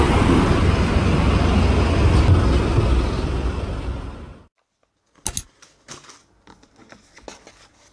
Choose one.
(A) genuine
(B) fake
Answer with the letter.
A